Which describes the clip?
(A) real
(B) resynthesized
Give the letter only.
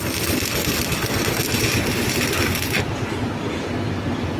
A